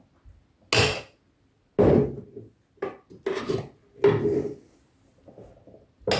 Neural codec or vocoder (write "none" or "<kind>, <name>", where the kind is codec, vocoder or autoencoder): none